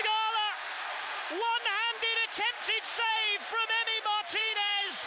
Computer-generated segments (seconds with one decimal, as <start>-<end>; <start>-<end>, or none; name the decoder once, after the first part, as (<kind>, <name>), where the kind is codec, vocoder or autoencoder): 4.4-5.1 (vocoder, BigVGAN v2)